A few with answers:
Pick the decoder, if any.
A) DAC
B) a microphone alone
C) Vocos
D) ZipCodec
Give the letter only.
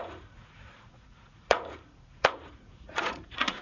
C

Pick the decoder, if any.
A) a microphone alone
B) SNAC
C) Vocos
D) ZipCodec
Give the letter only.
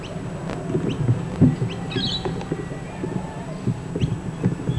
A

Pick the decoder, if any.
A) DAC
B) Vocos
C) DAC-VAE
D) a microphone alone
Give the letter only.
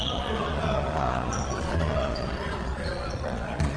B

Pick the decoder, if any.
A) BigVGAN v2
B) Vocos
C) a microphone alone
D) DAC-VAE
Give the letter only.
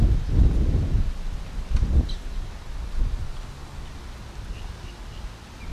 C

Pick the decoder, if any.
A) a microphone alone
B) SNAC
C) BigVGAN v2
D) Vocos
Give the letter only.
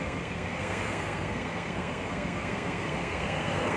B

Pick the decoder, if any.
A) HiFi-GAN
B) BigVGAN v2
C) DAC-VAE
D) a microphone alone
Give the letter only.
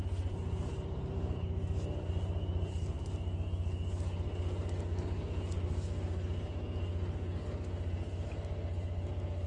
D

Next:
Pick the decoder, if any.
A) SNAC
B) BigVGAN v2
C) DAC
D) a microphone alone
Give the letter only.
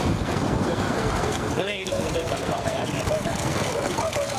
A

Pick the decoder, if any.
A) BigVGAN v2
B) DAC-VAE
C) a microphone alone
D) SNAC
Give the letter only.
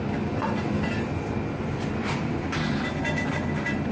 C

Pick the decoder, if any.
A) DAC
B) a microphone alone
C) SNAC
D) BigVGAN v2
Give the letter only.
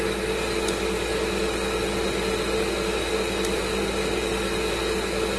B